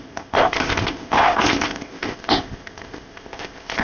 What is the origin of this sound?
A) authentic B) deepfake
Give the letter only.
B